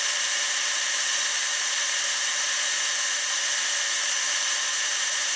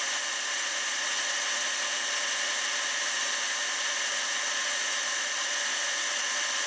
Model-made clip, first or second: first